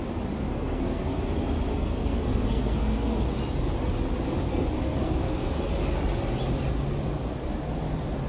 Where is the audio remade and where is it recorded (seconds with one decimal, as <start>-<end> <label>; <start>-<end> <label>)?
0.0-0.5 recorded; 0.5-1.2 remade; 1.2-1.7 recorded; 1.7-3.4 remade; 3.4-4.5 recorded; 4.5-5.7 remade; 5.7-8.3 recorded